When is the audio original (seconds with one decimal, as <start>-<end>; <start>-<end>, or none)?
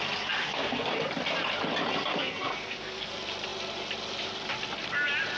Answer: 0.0-0.4; 0.9-2.1; 3.1-5.4